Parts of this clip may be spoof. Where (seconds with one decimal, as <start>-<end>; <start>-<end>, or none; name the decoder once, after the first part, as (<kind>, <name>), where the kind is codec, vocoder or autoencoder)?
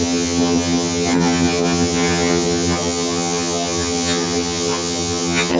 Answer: 0.0-5.6 (vocoder, HiFi-GAN)